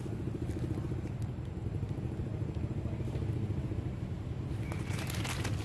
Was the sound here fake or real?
real